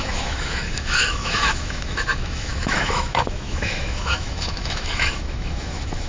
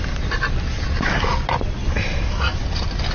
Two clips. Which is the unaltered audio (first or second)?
second